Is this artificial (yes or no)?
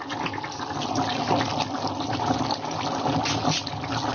no